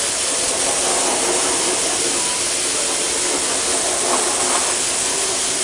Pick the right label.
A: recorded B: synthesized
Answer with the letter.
A